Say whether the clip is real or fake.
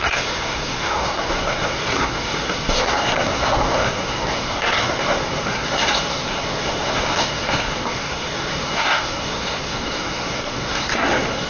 fake